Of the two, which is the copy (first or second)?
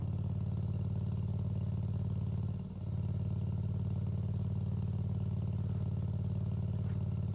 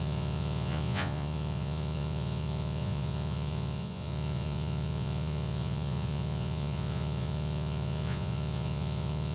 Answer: second